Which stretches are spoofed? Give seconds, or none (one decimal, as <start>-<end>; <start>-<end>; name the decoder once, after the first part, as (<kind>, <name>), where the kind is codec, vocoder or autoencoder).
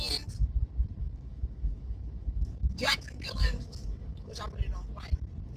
1.0-4.4 (autoencoder, DAC-VAE)